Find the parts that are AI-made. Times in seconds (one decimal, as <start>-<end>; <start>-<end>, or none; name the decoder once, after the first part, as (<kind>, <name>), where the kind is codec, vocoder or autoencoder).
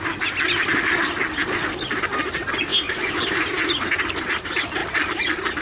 2.7-3.4 (vocoder, BigVGAN v2)